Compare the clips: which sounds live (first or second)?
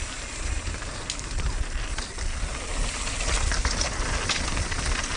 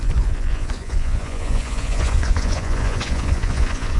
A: first